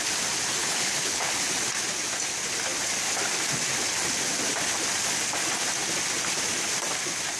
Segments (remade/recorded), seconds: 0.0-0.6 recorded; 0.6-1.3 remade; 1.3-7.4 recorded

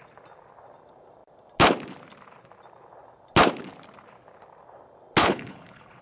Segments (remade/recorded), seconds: 0.0-5.2 recorded; 5.2-6.0 remade

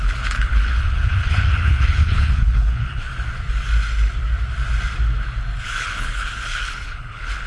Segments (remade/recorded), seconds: 0.0-3.1 remade; 3.1-5.6 recorded; 5.6-7.5 remade

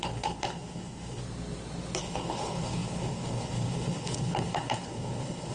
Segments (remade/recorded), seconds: 0.0-1.2 remade; 1.2-2.0 recorded; 2.0-5.5 remade

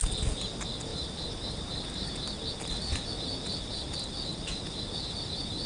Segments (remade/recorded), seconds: 0.0-5.7 recorded

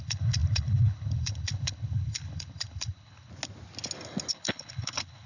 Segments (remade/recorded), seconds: 0.0-3.3 remade; 3.3-4.3 recorded; 4.3-5.3 remade

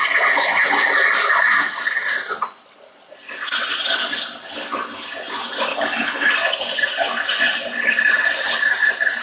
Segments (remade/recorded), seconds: 0.0-5.7 recorded; 5.7-6.3 remade; 6.3-9.2 recorded